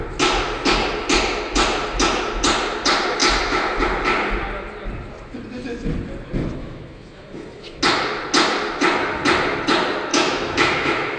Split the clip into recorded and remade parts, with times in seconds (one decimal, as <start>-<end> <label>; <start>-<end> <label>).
0.0-3.2 recorded; 3.2-3.8 remade; 3.8-6.6 recorded; 6.6-7.8 remade; 7.8-10.1 recorded; 10.1-11.2 remade